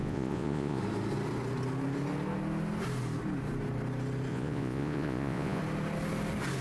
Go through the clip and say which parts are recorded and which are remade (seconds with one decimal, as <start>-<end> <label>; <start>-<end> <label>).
0.0-0.8 remade; 0.8-4.3 recorded; 4.3-5.6 remade; 5.6-6.6 recorded